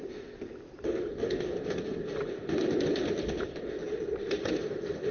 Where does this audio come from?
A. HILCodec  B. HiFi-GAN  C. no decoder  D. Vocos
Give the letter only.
C